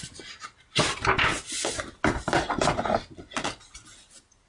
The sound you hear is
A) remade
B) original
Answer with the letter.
B